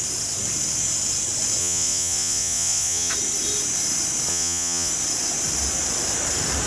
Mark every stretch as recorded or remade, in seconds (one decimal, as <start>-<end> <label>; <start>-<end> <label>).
0.0-1.6 recorded; 1.6-3.1 remade; 3.1-4.3 recorded; 4.3-4.9 remade; 4.9-6.7 recorded